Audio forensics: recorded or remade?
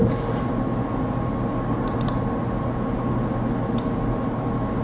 recorded